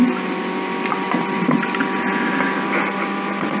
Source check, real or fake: real